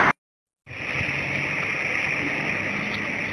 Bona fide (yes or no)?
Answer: yes